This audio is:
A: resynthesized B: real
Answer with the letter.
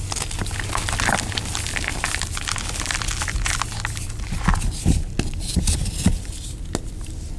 B